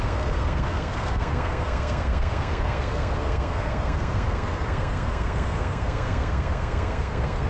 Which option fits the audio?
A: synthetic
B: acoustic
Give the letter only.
A